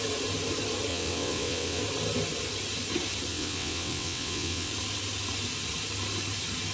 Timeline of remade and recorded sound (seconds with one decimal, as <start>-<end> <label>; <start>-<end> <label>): 0.0-0.9 recorded; 0.9-1.8 remade; 1.8-3.3 recorded; 3.3-4.7 remade; 4.7-6.7 recorded

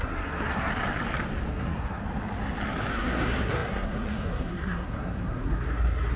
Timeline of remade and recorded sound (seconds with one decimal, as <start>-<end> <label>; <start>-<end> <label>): 0.0-0.7 remade; 0.7-1.5 recorded; 1.5-2.0 remade; 2.0-2.9 recorded; 2.9-6.2 remade

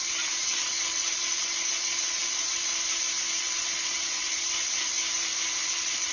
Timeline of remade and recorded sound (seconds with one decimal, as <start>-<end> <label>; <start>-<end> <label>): 0.0-2.7 remade; 2.7-3.4 recorded; 3.4-5.0 remade; 5.0-5.6 recorded; 5.6-6.1 remade